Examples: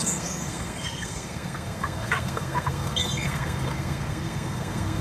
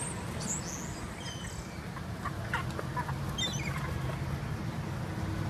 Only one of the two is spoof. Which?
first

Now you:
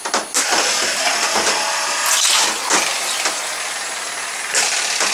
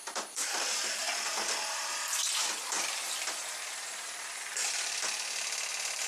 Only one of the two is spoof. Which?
second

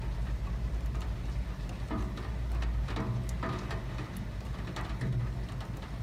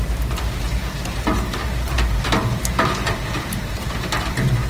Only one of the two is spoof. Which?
second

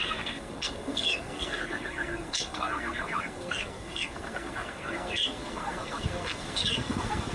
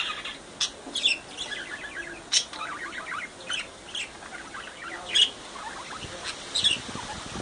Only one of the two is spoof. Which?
first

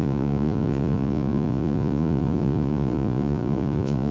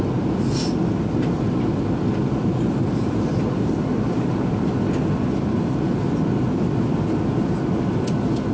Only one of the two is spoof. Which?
first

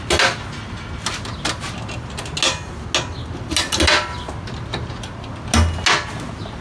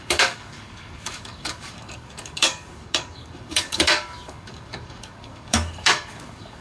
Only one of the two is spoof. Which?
second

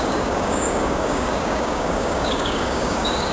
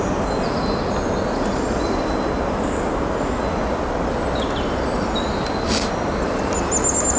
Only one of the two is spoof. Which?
first